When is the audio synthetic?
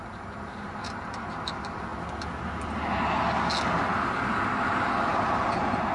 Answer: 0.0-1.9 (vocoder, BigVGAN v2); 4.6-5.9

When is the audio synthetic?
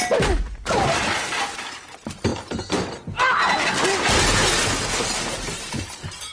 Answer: none